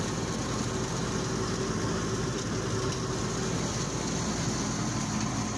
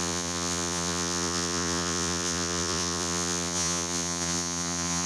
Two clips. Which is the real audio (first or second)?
first